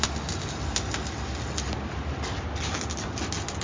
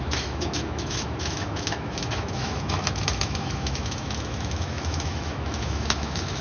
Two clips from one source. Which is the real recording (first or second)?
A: first